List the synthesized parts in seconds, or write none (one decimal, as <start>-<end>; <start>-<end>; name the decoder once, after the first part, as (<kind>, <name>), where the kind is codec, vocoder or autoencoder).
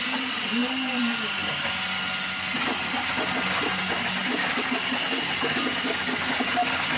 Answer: 0.6-1.8 (vocoder, BigVGAN v2); 4.2-6.5